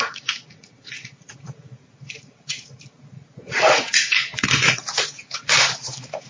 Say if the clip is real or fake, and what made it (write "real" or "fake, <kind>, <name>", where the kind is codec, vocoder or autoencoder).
fake, vocoder, Vocos